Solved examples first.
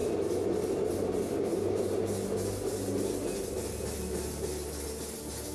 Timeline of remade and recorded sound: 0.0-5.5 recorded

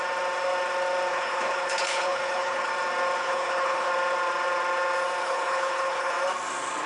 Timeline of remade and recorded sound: 0.0-1.1 recorded; 1.1-2.7 remade; 2.7-3.2 recorded; 3.2-3.9 remade; 3.9-5.2 recorded; 5.2-6.1 remade; 6.1-6.9 recorded

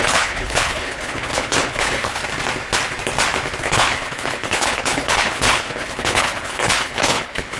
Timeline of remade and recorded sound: 0.0-2.2 remade; 2.2-3.6 recorded; 3.6-7.6 remade

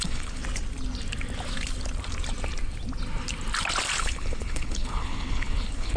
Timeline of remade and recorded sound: 0.0-0.4 remade; 0.4-4.0 recorded; 4.0-6.0 remade

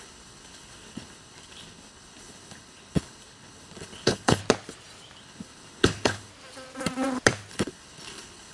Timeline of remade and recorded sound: 0.0-4.4 remade; 4.4-5.2 recorded; 5.2-6.3 remade; 6.3-7.5 recorded; 7.5-8.5 remade

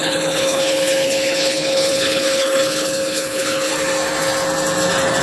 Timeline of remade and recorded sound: 0.0-3.7 remade; 3.7-5.2 recorded

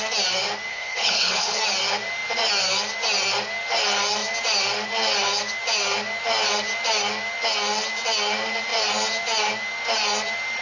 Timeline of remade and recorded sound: 0.0-0.7 recorded; 0.7-1.6 remade; 1.6-10.6 recorded